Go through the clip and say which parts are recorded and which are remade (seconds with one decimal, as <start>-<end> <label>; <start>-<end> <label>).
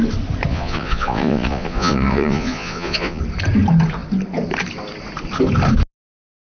0.0-0.5 recorded; 0.5-3.2 remade; 3.2-6.5 recorded